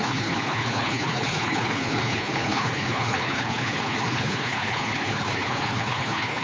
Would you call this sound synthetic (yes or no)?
yes